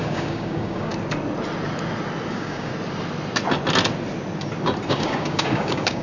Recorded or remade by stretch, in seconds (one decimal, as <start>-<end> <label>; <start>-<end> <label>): 0.0-0.9 remade; 0.9-2.3 recorded; 2.3-2.7 remade; 2.7-4.9 recorded; 4.9-6.0 remade

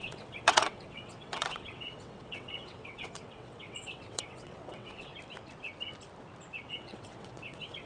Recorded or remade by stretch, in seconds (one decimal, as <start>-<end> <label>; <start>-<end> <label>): 0.0-5.1 remade; 5.1-6.7 recorded; 6.7-7.9 remade